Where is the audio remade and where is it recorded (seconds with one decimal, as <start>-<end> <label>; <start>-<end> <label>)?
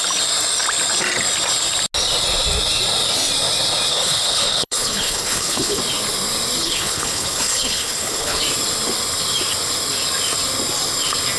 0.0-3.9 recorded; 3.9-5.8 remade; 5.8-6.6 recorded; 6.6-8.4 remade; 8.4-11.4 recorded